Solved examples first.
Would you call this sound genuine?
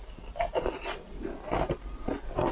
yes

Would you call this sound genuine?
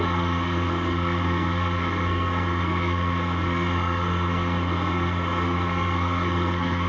no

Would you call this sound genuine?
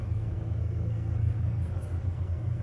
no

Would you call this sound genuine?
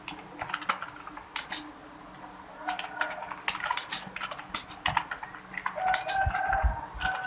yes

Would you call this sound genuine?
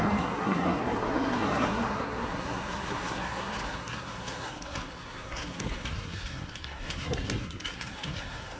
no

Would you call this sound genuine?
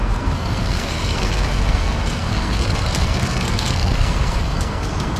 no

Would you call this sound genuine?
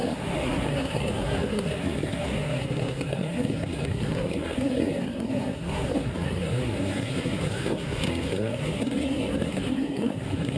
no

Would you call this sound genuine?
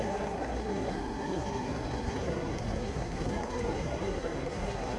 no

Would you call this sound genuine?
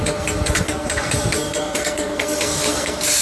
no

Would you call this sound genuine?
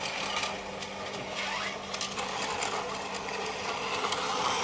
yes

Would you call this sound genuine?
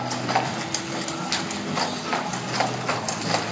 yes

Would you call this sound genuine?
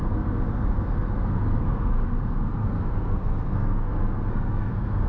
no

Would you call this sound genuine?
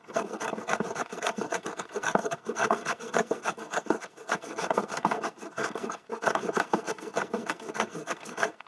no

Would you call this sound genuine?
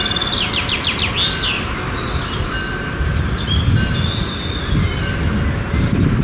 yes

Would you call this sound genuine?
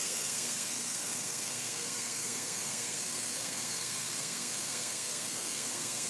no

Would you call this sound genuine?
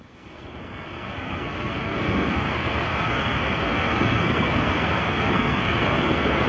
no